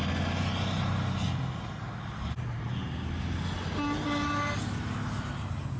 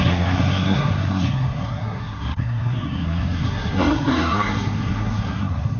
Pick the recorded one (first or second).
first